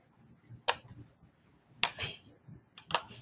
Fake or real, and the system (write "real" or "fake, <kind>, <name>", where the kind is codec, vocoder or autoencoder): real